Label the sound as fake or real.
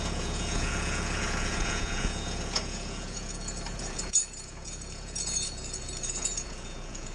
fake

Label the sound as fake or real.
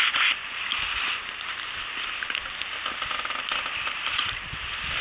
real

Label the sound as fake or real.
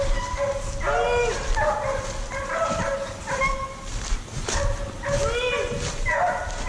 real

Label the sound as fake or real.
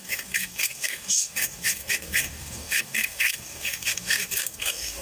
fake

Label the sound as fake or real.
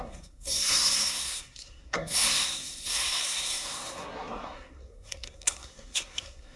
fake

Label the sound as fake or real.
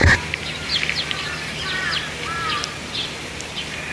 real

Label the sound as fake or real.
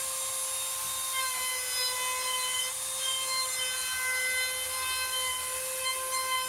real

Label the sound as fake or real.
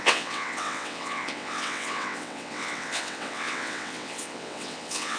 fake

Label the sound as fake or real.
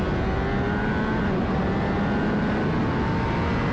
real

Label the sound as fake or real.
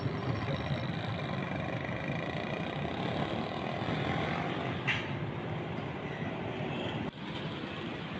real